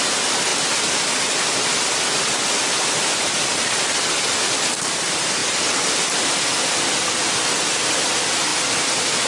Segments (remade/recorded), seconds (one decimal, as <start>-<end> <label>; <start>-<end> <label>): 0.0-9.3 recorded